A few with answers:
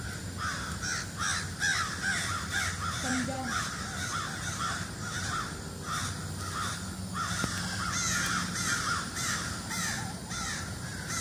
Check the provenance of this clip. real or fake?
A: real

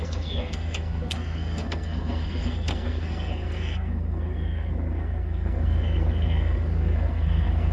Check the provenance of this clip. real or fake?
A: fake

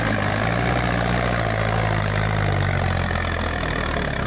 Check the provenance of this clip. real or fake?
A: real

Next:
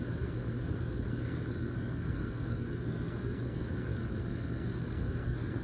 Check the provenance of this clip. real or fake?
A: fake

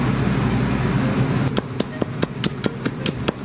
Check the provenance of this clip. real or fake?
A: real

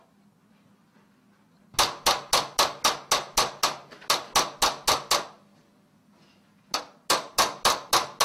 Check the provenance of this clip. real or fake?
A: real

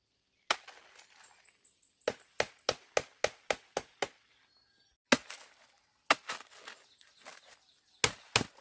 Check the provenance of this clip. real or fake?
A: real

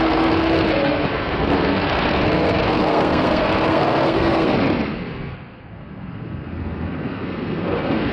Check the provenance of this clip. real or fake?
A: fake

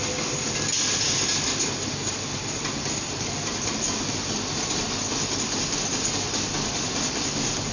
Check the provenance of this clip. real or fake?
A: real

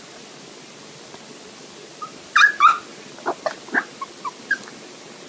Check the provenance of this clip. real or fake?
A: real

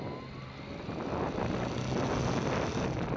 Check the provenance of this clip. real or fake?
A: real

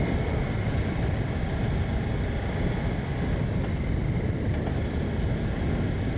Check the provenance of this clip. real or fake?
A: real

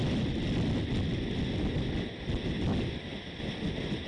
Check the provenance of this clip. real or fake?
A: real